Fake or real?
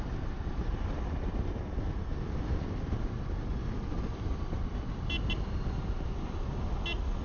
real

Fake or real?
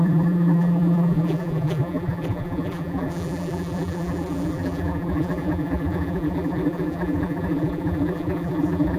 fake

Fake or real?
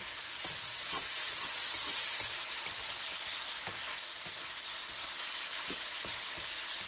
real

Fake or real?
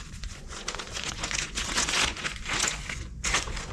fake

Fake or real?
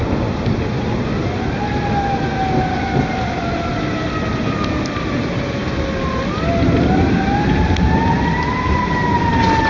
real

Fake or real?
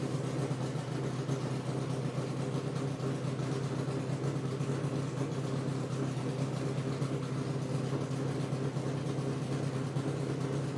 real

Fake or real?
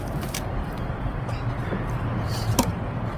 fake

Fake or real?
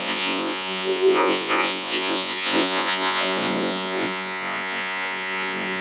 fake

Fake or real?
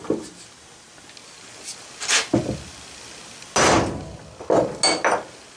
real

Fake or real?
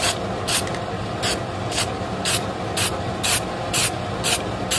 real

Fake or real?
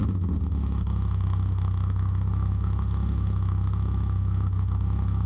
fake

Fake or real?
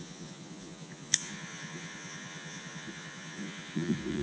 fake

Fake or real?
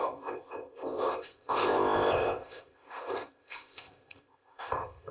fake